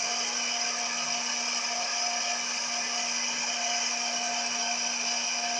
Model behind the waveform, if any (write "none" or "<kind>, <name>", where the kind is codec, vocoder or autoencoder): none